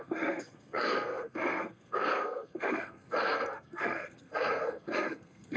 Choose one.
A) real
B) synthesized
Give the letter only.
B